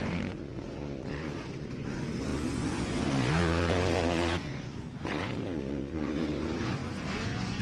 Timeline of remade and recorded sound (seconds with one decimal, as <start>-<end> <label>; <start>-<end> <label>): 0.0-7.6 remade